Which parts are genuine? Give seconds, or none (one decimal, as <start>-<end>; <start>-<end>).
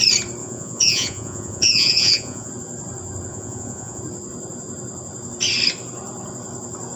0.0-0.4; 2.5-3.3; 4.0-7.0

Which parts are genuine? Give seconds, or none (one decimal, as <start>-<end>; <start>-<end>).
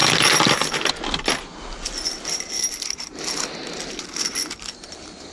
0.0-5.3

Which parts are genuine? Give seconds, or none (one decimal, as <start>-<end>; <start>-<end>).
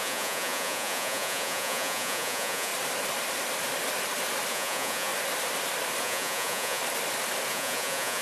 2.7-4.5; 5.1-6.0; 6.8-7.5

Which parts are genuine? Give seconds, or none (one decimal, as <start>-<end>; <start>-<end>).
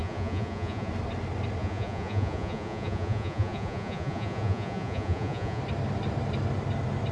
0.9-1.6; 5.6-7.1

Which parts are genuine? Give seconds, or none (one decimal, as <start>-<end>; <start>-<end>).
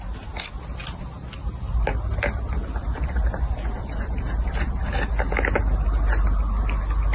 0.0-7.1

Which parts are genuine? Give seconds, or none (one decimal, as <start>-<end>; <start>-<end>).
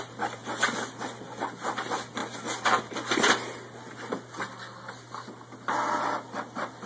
0.0-6.9